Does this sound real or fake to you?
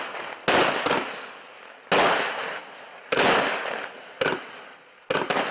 real